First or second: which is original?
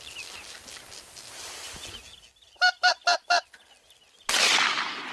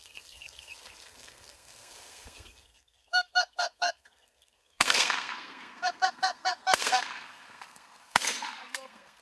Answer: first